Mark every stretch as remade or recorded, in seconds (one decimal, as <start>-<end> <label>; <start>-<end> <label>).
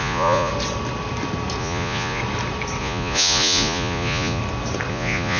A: 0.0-0.5 remade; 0.5-1.6 recorded; 1.6-2.2 remade; 2.2-2.8 recorded; 2.8-4.4 remade; 4.4-4.9 recorded; 4.9-5.4 remade